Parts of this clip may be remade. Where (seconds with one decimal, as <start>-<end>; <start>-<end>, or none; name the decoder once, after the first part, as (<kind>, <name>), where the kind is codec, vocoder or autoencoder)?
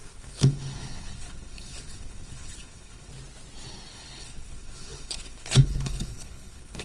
0.0-3.1 (codec, HILCodec); 3.9-6.8